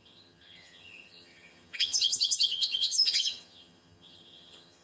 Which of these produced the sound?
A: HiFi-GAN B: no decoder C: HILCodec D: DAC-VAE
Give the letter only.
A